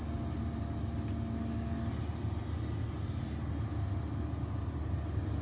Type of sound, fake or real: real